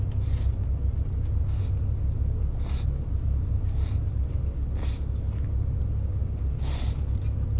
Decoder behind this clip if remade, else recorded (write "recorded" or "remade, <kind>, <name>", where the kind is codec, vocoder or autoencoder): recorded